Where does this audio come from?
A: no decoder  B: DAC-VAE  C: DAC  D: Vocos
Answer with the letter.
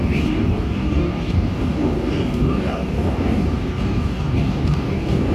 C